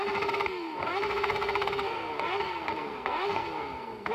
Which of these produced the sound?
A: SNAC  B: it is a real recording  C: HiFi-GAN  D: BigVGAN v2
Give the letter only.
A